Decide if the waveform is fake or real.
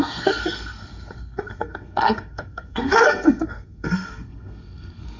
fake